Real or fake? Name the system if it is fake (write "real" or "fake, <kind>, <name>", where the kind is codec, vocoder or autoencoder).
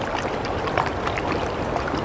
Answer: real